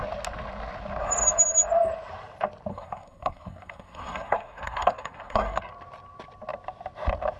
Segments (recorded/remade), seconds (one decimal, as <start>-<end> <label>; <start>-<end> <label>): 0.0-2.7 recorded; 2.7-5.6 remade; 5.6-7.4 recorded